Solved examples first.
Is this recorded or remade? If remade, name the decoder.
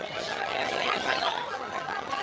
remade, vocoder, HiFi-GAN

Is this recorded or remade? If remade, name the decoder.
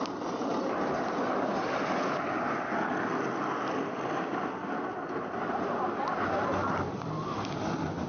recorded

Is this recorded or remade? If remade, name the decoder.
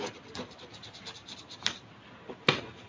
recorded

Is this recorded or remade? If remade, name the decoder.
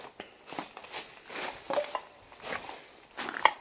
recorded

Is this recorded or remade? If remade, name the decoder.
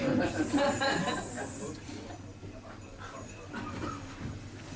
recorded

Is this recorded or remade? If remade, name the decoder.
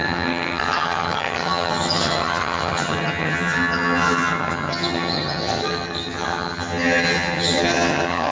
remade, vocoder, HiFi-GAN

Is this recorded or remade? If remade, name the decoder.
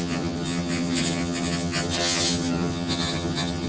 remade, vocoder, HiFi-GAN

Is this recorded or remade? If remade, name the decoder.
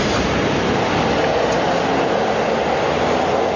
recorded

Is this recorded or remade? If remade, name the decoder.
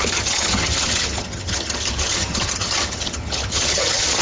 remade, vocoder, HiFi-GAN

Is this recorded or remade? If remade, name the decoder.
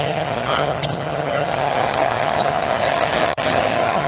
remade, vocoder, HiFi-GAN